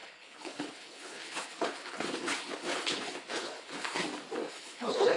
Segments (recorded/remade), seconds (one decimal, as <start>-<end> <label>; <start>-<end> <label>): 0.0-4.0 remade; 4.0-4.5 recorded; 4.5-5.2 remade